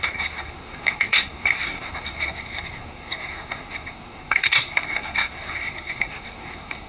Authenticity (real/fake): fake